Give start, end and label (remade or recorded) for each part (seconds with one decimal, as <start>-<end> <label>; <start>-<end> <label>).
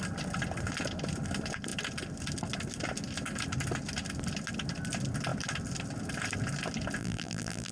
0.0-7.0 recorded; 7.0-7.7 remade